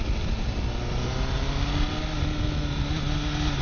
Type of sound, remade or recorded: recorded